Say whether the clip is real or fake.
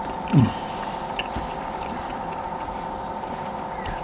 fake